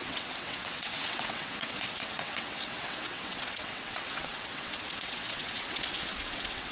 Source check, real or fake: fake